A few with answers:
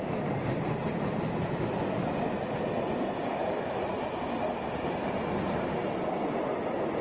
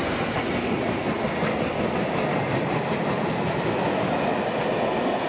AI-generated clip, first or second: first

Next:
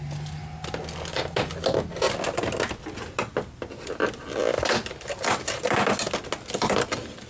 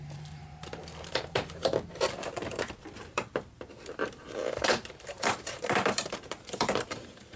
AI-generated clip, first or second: second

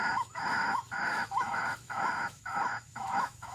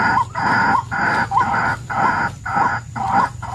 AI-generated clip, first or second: first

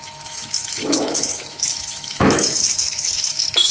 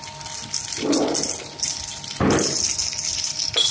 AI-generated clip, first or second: first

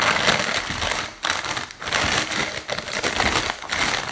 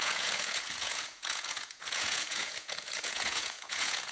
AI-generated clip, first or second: second